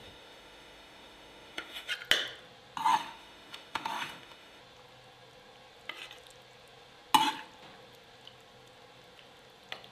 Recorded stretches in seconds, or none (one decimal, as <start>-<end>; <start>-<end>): 1.9-2.9; 4.6-9.9